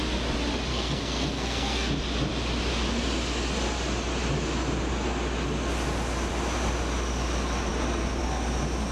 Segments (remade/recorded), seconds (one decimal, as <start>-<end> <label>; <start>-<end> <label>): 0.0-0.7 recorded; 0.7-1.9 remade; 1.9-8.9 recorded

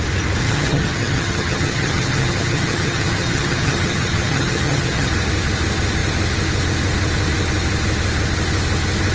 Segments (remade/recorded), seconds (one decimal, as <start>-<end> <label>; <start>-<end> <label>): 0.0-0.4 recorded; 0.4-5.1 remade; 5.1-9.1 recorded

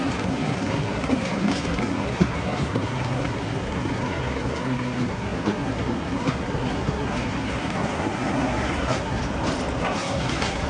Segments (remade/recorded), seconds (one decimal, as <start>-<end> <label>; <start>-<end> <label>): 0.0-9.2 remade; 9.2-9.8 recorded; 9.8-10.7 remade

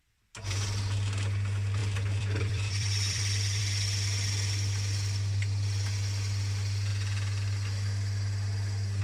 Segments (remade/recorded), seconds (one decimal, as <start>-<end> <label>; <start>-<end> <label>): 0.0-1.8 recorded; 1.8-3.6 remade; 3.6-9.0 recorded

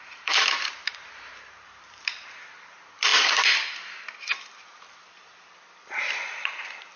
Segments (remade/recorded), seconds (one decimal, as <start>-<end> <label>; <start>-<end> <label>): 0.0-7.0 recorded